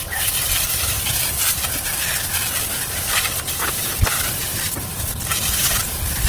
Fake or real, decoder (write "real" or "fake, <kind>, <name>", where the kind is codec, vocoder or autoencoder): fake, vocoder, BigVGAN v2